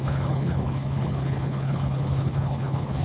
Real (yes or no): no